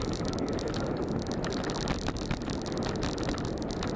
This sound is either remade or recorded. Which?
recorded